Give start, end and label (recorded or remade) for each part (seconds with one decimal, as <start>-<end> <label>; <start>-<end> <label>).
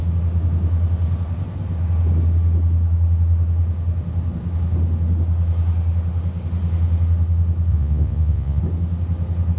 0.0-7.7 recorded; 7.7-8.6 remade; 8.6-9.6 recorded